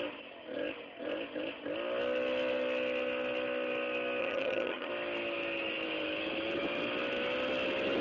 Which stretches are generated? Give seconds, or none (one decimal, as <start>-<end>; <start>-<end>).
4.2-4.9